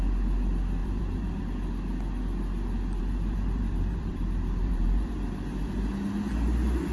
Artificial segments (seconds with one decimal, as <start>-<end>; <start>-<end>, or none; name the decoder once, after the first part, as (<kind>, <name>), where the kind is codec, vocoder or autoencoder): 0.8-1.4 (vocoder, BigVGAN v2); 3.0-5.1